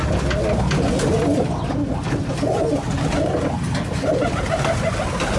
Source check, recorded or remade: recorded